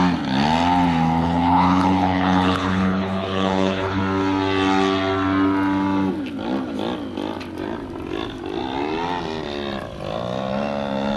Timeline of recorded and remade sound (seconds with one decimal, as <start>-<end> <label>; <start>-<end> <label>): 0.0-1.2 recorded; 1.2-4.0 remade; 4.0-11.2 recorded